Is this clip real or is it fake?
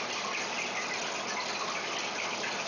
real